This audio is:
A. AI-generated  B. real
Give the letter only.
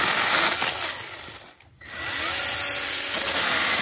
B